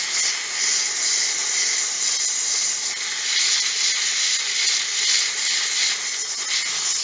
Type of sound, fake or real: real